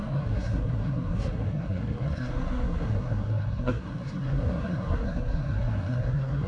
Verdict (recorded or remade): remade